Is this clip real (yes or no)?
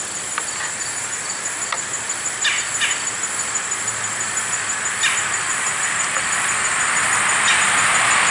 yes